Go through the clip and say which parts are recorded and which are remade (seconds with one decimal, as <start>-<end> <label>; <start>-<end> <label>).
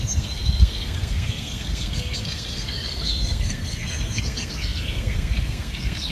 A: 0.0-6.1 remade